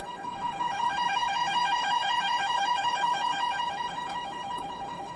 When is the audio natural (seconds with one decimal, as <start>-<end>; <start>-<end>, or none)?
none